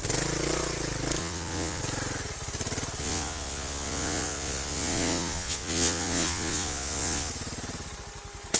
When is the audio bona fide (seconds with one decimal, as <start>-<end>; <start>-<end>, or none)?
0.0-1.2; 1.8-3.0; 7.3-8.6